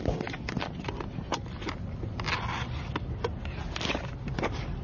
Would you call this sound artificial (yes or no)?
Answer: no